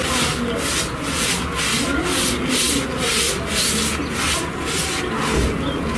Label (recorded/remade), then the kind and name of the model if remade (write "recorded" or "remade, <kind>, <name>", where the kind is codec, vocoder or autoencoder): recorded